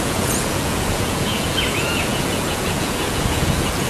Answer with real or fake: fake